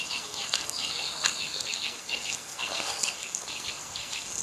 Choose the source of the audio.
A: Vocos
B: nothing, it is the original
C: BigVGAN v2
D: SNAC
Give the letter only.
D